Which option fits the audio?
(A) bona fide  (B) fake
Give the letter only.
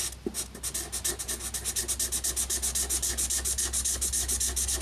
A